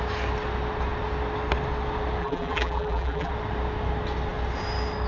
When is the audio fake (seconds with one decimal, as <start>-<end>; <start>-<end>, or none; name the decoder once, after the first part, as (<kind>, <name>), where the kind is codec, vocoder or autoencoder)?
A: 2.2-3.3 (vocoder, BigVGAN v2)